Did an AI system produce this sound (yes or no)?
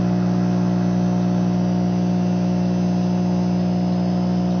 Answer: no